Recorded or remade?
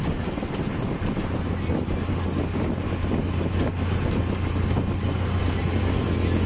recorded